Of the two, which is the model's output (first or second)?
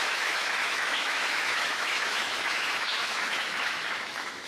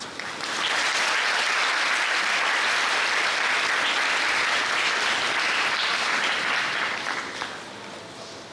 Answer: first